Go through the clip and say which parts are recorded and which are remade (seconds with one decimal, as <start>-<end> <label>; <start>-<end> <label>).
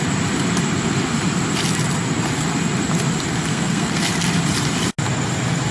0.0-3.5 recorded; 3.5-4.1 remade; 4.1-5.7 recorded